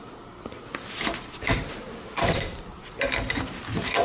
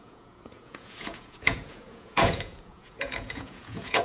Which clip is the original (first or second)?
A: first